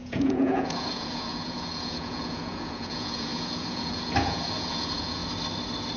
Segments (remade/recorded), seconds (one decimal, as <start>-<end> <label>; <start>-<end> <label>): 0.0-5.2 remade; 5.2-6.0 recorded